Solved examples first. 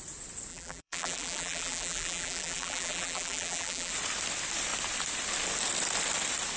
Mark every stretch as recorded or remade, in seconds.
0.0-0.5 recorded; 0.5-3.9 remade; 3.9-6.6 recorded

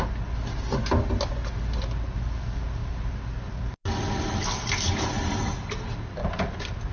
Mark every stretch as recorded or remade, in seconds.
0.0-6.9 recorded

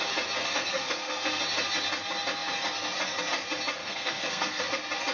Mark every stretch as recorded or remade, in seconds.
0.0-0.4 recorded; 0.4-1.4 remade; 1.4-3.8 recorded; 3.8-4.6 remade; 4.6-5.1 recorded

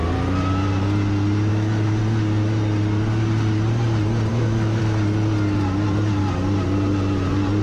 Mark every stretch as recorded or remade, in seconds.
0.0-1.5 recorded; 1.5-2.0 remade; 2.0-4.3 recorded; 4.3-4.8 remade; 4.8-7.6 recorded

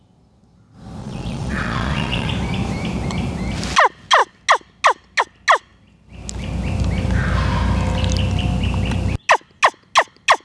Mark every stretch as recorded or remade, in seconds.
0.0-1.0 recorded; 1.0-2.3 remade; 2.3-10.4 recorded

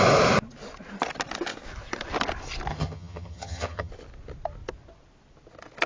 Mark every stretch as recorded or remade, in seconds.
0.0-2.7 recorded; 2.7-3.9 remade; 3.9-5.9 recorded

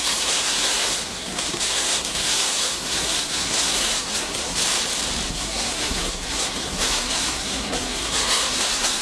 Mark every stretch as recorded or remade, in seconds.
0.0-4.6 remade; 4.6-5.3 recorded; 5.3-9.0 remade